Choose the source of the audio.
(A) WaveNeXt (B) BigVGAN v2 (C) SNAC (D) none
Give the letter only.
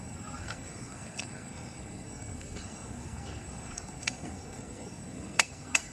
C